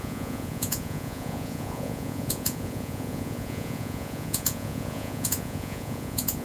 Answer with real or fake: fake